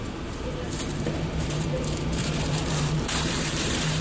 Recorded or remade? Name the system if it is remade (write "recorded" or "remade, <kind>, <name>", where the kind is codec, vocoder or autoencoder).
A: remade, vocoder, BigVGAN v2